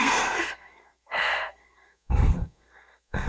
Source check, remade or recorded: remade